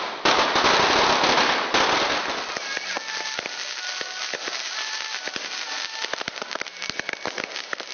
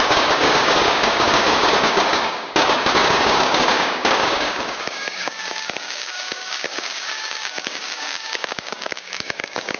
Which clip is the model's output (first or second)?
second